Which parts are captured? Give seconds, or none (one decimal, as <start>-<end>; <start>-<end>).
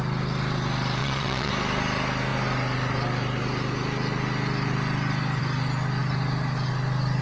0.0-1.0; 1.5-7.2